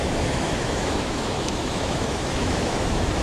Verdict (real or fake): fake